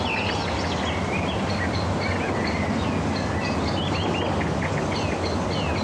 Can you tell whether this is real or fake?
real